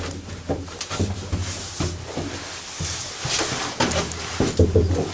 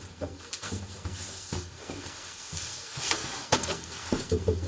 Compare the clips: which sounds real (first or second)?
first